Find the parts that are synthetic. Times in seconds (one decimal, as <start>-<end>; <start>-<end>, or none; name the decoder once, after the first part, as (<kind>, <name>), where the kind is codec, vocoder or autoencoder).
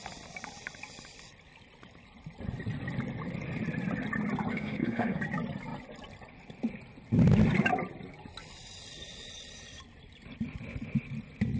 4.5-5.2 (autoencoder, DAC-VAE)